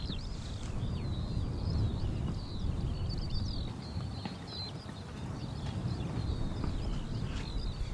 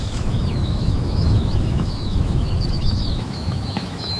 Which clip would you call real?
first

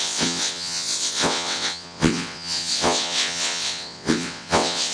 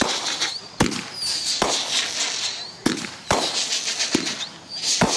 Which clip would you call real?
second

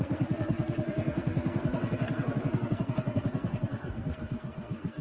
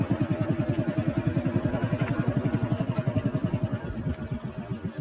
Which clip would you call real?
second